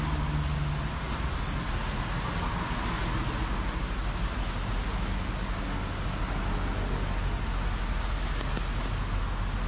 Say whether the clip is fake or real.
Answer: real